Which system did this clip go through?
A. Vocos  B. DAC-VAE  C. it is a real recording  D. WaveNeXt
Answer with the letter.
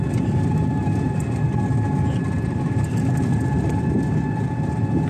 C